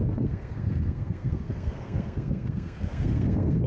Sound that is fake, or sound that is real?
fake